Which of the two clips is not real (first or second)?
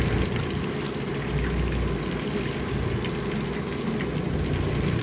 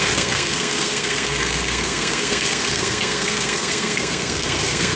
second